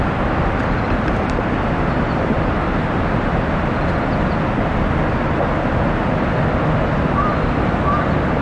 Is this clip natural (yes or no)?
yes